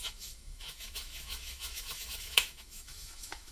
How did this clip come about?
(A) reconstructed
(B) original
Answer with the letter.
A